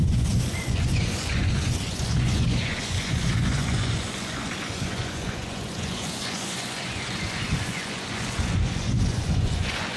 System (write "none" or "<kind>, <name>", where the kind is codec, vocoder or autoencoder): vocoder, Vocos